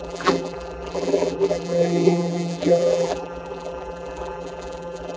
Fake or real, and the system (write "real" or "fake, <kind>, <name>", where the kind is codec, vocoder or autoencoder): fake, vocoder, BigVGAN v2